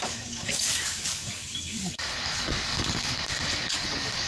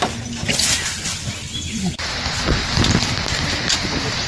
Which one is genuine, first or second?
second